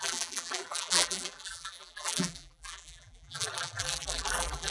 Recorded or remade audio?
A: remade